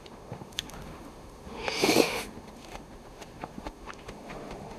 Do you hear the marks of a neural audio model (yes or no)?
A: yes